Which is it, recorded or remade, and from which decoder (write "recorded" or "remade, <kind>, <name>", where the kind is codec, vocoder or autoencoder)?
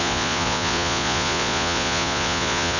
remade, vocoder, Vocos